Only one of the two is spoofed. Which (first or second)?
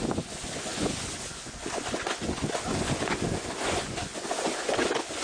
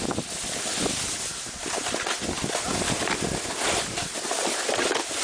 first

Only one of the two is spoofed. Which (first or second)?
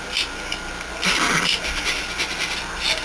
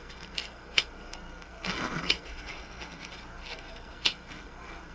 second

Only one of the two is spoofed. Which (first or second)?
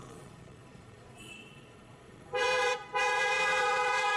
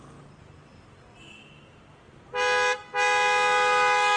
first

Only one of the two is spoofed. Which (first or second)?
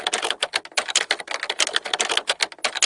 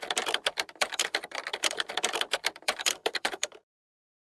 second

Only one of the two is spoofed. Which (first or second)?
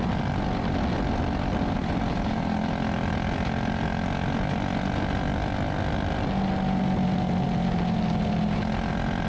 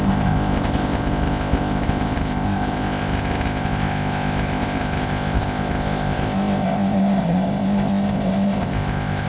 second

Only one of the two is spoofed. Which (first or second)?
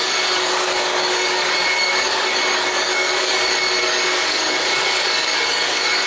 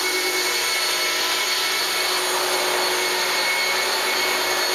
first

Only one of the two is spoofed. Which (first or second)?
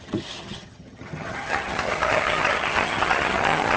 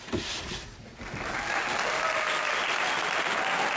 first